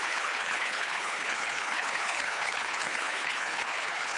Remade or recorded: remade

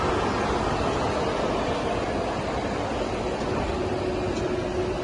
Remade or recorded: recorded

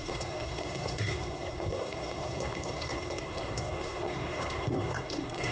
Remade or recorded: remade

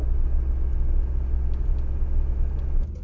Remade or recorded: recorded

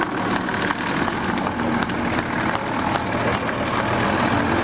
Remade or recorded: recorded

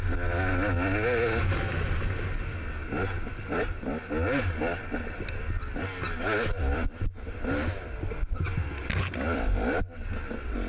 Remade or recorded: recorded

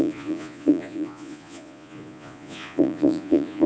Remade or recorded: remade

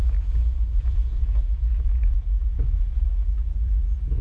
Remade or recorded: remade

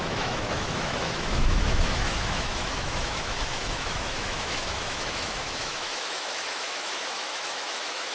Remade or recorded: remade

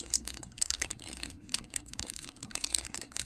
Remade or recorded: remade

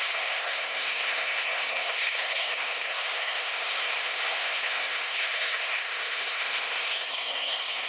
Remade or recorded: remade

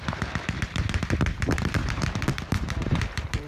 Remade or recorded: remade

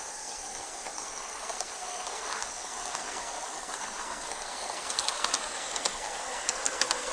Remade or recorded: remade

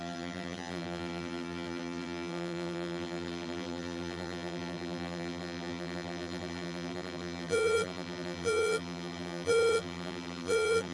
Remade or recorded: remade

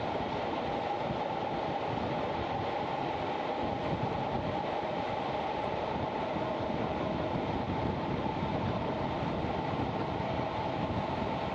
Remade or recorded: recorded